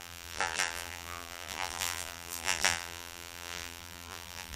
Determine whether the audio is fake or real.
fake